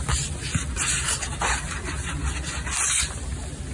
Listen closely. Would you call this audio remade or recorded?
recorded